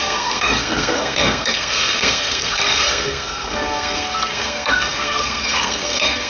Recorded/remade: remade